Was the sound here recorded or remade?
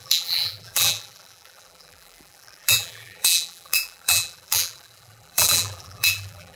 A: remade